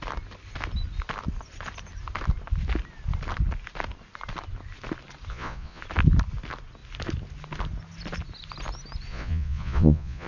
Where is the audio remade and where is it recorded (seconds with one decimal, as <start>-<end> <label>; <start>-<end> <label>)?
0.0-5.3 recorded; 5.3-5.8 remade; 5.8-9.1 recorded; 9.1-10.3 remade